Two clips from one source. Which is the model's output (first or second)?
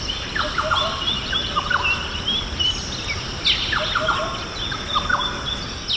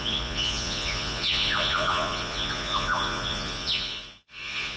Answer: second